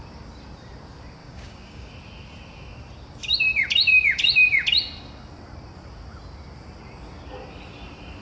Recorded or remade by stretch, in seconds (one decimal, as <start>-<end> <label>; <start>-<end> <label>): 0.0-1.2 recorded; 1.2-1.9 remade; 1.9-8.2 recorded

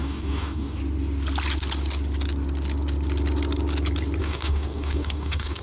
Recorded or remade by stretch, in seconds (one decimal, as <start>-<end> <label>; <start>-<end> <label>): 0.0-0.8 remade; 0.8-4.2 recorded; 4.2-5.6 remade

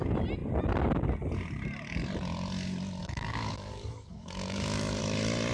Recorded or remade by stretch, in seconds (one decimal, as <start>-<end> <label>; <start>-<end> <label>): 0.0-3.0 recorded; 3.0-5.0 remade; 5.0-5.5 recorded

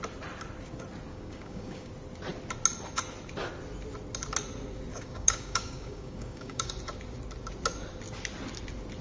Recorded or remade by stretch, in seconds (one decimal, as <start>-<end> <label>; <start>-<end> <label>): 0.0-1.1 recorded; 1.1-1.9 remade; 1.9-4.9 recorded; 4.9-6.7 remade; 6.7-9.0 recorded

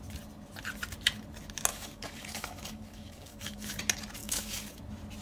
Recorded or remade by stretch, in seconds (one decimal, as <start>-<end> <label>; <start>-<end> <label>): 0.0-1.7 recorded; 1.7-3.8 remade; 3.8-4.2 recorded; 4.2-4.8 remade; 4.8-5.2 recorded

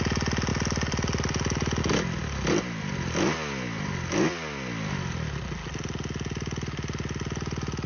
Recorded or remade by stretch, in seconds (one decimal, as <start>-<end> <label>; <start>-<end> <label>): 0.0-7.9 recorded